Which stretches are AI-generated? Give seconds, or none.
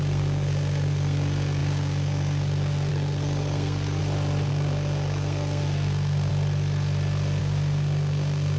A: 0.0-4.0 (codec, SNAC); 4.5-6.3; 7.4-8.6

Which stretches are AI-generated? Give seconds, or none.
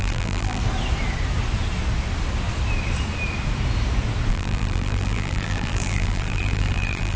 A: 0.0-0.6 (vocoder, BigVGAN v2); 4.3-7.2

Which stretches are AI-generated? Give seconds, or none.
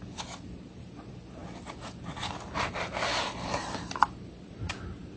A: none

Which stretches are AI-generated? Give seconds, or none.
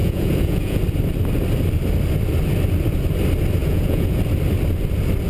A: 0.0-0.8 (vocoder, Vocos); 3.6-4.2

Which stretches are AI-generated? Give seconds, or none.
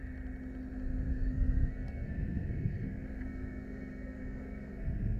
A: 1.1-5.2 (codec, SNAC)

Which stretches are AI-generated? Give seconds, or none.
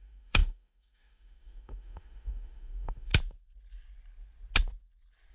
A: 0.0-3.1 (autoencoder, DAC-VAE)